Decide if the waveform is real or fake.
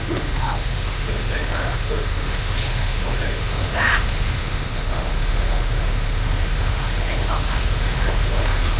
fake